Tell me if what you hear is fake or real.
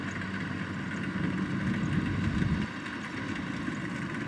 real